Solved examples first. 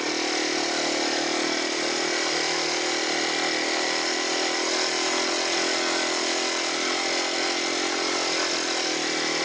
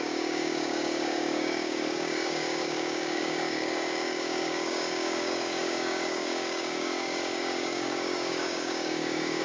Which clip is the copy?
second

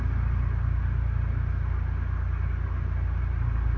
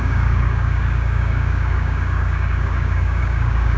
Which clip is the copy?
second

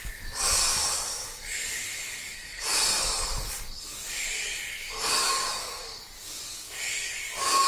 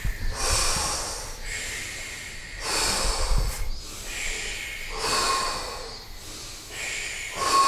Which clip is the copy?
first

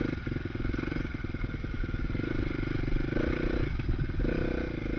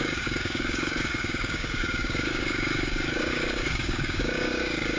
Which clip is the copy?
second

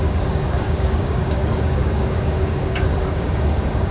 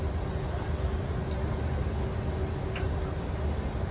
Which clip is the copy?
first